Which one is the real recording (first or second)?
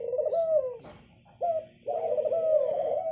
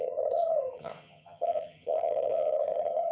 first